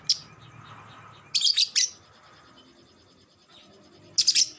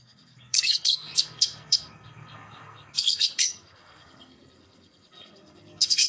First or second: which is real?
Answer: first